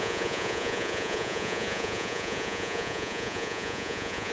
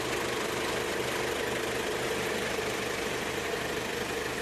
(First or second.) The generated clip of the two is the first